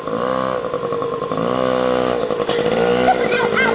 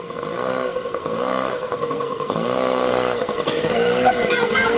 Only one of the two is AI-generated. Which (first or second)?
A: second